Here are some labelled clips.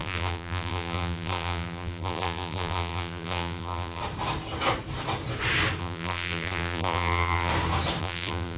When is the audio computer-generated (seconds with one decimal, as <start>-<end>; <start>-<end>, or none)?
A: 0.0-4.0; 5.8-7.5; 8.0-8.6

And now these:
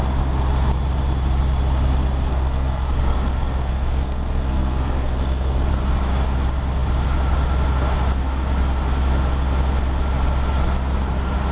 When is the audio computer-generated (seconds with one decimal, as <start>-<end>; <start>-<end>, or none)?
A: 2.3-5.7

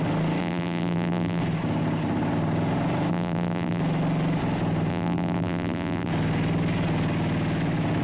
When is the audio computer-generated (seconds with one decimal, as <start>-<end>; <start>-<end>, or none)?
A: 0.4-1.4; 3.1-3.8; 4.9-6.1

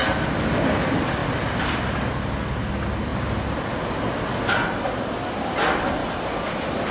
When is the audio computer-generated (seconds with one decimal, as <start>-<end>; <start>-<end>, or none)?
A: none

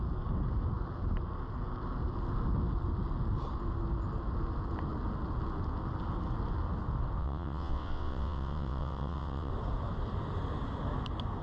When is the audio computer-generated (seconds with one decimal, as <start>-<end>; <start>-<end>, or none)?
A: 7.2-9.5